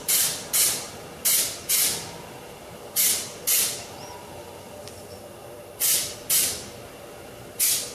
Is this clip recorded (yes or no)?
yes